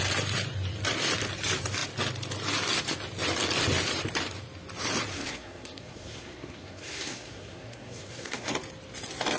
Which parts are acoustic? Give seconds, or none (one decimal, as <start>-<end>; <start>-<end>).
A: 0.0-5.1; 8.5-9.4